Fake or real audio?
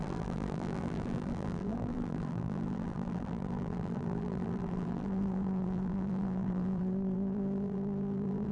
fake